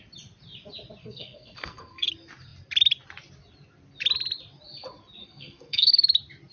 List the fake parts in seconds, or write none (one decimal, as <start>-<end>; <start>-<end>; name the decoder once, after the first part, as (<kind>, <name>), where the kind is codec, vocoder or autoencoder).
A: 1.0-2.1 (codec, SNAC); 5.2-5.9

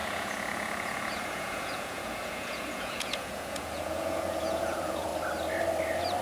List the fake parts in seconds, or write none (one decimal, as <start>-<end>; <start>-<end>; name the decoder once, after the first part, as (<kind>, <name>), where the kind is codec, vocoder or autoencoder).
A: 0.0-5.1 (vocoder, Vocos)

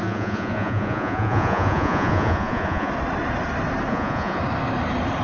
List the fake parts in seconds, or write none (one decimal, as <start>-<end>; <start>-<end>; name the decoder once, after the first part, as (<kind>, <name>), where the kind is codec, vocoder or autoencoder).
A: 0.0-2.9 (vocoder, Vocos); 3.9-4.4

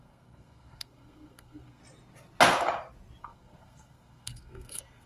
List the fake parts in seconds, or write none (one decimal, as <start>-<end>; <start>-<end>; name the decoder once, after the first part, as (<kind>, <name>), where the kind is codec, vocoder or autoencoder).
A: 0.0-1.8 (codec, SNAC); 3.2-5.1

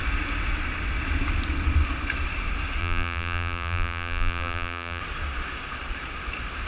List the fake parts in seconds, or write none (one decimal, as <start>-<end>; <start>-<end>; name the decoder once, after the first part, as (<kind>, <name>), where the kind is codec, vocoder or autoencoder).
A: 2.8-5.0 (vocoder, BigVGAN v2)

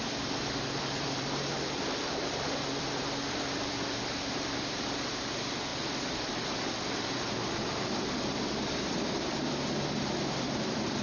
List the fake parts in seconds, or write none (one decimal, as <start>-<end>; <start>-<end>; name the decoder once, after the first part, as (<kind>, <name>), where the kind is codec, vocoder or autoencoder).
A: 0.0-5.7 (vocoder, BigVGAN v2); 6.9-11.0

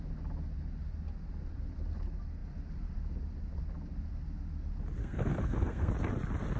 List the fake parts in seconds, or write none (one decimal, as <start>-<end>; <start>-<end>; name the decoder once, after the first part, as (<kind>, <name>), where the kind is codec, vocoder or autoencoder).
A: 5.0-5.9 (codec, SNAC)